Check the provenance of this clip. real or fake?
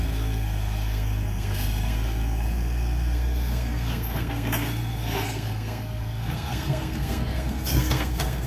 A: fake